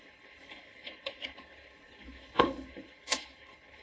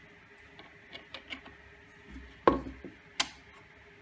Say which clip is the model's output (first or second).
first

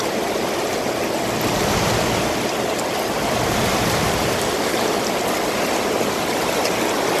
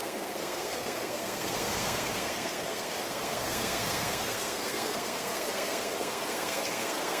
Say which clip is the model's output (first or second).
second